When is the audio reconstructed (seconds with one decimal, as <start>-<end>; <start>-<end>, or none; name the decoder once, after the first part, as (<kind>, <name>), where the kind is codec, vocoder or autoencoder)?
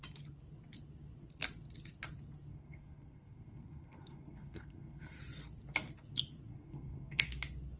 2.5-5.2 (codec, SNAC); 6.5-7.3